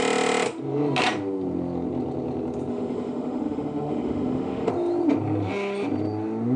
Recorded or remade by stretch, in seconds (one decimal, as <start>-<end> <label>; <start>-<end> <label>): 0.0-2.7 recorded; 2.7-4.7 remade; 4.7-6.6 recorded